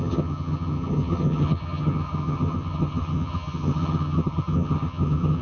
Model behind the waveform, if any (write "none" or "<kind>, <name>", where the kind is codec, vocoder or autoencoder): vocoder, HiFi-GAN